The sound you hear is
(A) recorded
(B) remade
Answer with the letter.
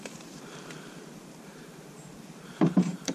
B